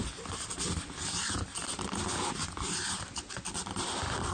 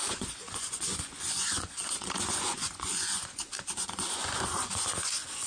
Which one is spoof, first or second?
second